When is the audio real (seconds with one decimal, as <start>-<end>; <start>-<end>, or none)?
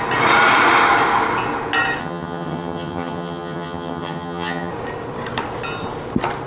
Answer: 0.0-2.0; 4.7-6.5